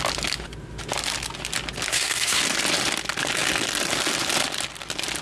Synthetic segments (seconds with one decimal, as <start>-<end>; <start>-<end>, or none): 1.9-2.4